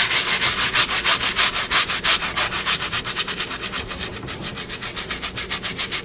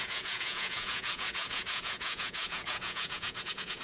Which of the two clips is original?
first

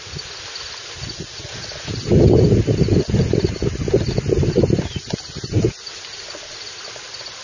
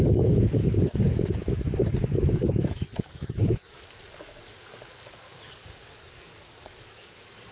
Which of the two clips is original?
first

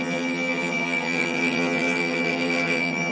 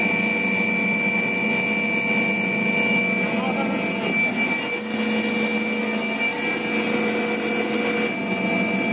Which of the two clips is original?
second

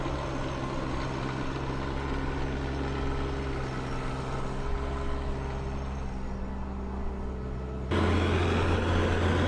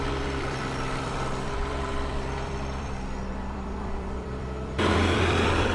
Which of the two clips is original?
first